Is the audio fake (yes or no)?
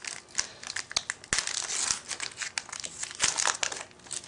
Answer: no